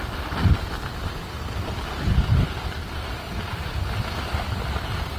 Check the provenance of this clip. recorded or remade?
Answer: recorded